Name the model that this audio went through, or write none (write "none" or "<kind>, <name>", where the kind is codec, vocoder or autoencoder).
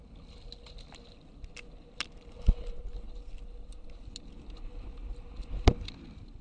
none